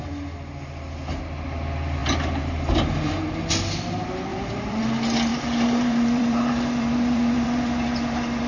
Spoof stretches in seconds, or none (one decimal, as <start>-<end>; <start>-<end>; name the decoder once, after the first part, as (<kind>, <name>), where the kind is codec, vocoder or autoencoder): 2.0-3.4 (vocoder, BigVGAN v2); 4.3-4.8; 5.3-8.5